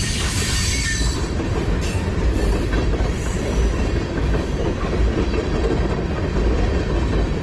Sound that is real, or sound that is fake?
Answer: fake